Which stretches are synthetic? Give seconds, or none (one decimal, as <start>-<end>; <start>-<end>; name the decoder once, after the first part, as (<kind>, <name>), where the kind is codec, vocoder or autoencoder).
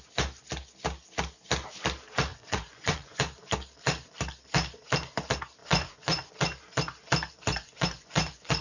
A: 2.3-3.2 (vocoder, Vocos); 5.6-6.3; 7.5-8.6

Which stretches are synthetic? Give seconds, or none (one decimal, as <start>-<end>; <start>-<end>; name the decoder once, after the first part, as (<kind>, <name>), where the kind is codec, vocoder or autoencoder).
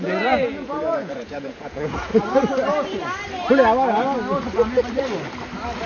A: 0.0-2.1 (vocoder, Vocos)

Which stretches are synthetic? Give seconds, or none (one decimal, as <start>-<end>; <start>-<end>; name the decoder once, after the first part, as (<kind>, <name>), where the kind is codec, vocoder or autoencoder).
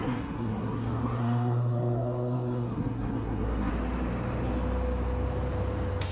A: 0.0-3.7 (codec, SNAC)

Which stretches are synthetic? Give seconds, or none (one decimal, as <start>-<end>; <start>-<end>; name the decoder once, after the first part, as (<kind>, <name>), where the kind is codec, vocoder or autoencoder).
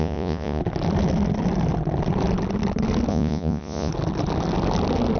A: 0.0-0.6 (vocoder, Vocos); 3.1-3.9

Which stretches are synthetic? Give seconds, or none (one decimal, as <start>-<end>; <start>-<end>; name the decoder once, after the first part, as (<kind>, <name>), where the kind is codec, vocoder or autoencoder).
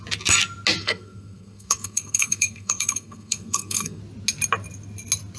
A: 0.8-4.0 (codec, SNAC)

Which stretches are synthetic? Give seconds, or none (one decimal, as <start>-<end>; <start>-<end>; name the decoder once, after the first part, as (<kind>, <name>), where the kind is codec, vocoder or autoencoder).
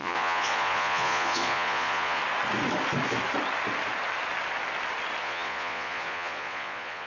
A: 0.0-2.2 (vocoder, Vocos); 5.2-7.1